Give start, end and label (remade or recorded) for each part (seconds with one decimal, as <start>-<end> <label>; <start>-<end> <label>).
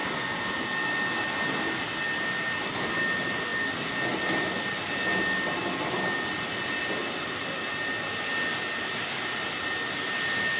0.0-10.6 recorded